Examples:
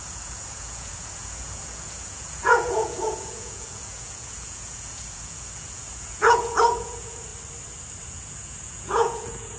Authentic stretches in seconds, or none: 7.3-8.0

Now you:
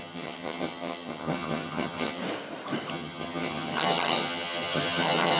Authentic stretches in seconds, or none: 2.2-2.9

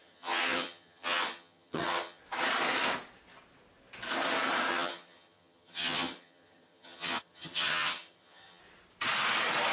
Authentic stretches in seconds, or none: 2.2-4.7; 8.6-9.7